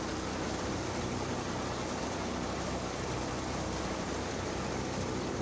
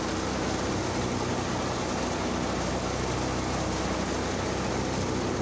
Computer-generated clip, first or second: first